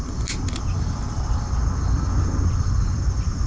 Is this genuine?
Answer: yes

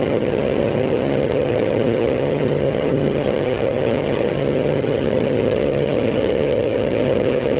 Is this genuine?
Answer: no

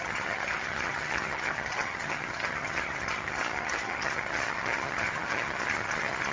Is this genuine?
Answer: no